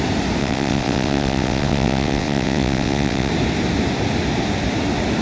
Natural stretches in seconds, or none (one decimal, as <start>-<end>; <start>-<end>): 0.0-0.4; 3.3-5.2